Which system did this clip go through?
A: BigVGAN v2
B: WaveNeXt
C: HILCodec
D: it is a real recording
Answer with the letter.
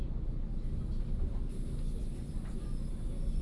D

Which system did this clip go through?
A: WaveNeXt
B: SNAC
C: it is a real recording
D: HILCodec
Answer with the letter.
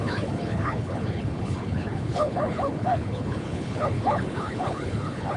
D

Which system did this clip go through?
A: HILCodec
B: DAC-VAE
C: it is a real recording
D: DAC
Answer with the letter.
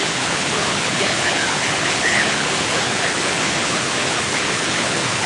A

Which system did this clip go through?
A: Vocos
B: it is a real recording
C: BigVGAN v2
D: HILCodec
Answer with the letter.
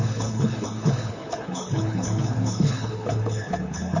D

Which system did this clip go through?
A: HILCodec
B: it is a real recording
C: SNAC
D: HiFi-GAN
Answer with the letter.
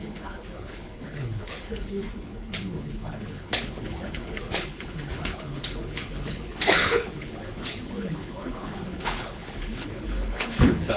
A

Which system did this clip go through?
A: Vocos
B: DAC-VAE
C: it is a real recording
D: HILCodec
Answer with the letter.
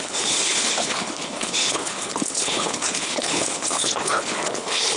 D